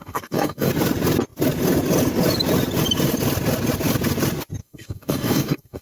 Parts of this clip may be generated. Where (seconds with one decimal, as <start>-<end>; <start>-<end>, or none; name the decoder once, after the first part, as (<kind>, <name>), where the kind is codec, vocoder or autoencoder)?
0.0-0.7 (codec, DAC); 4.6-5.8